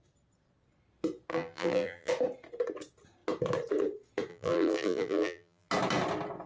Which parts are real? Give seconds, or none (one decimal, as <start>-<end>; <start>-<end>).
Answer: 0.0-1.3; 2.1-4.3; 5.7-6.5